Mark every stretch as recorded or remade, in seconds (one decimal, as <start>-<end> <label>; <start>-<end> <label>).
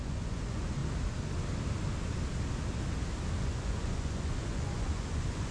0.0-0.8 remade; 0.8-3.4 recorded; 3.4-5.5 remade